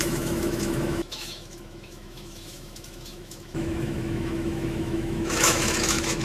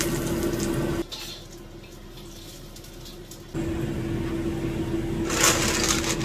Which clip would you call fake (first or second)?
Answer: first